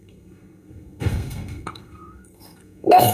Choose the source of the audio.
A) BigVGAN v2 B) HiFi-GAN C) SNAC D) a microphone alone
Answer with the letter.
C